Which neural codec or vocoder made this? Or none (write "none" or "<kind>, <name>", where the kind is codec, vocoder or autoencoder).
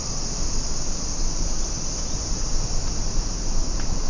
none